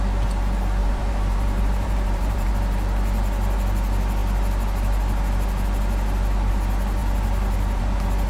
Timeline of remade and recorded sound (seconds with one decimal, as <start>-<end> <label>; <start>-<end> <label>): 0.0-0.8 recorded; 0.8-2.5 remade; 2.5-8.3 recorded